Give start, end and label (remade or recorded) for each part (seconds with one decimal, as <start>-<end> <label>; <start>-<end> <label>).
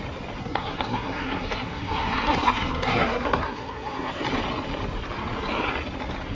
0.0-0.4 recorded; 0.4-4.2 remade; 4.2-6.3 recorded